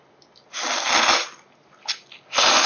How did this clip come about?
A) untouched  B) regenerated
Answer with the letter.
A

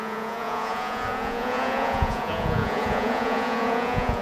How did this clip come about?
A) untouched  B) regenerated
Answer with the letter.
B